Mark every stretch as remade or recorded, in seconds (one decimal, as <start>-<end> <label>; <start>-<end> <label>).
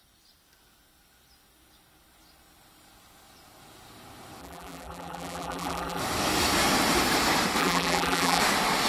0.0-4.4 recorded; 4.4-6.0 remade; 6.0-7.6 recorded; 7.6-8.4 remade; 8.4-8.9 recorded